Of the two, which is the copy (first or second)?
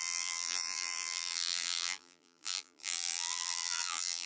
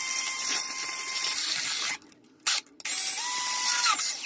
first